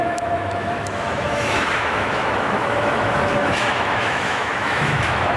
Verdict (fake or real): fake